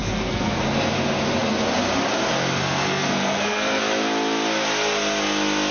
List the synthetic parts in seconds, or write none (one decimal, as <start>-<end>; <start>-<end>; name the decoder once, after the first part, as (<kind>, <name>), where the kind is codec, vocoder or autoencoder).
0.0-0.6 (codec, SNAC); 2.6-3.8